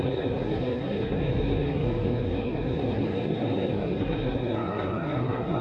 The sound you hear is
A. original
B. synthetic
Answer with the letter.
B